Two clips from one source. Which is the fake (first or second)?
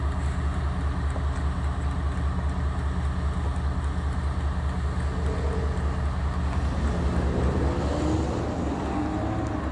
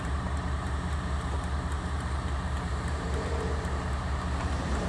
second